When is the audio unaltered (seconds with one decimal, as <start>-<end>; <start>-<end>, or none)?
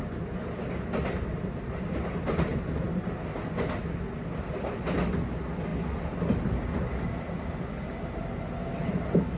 0.0-9.4